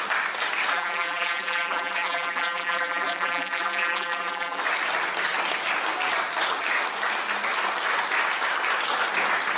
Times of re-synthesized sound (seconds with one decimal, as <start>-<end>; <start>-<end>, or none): 0.7-4.6